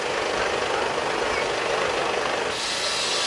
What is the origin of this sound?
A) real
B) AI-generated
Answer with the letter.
A